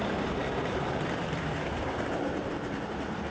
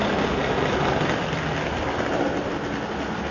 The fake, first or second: first